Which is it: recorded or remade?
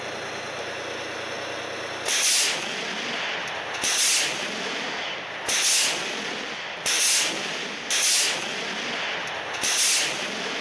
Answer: recorded